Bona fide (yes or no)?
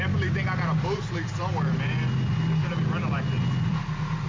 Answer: no